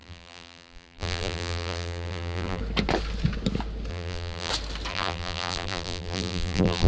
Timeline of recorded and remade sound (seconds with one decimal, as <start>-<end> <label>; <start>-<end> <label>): 0.0-2.6 remade; 2.6-3.9 recorded; 3.9-4.5 remade; 4.5-4.9 recorded; 4.9-6.9 remade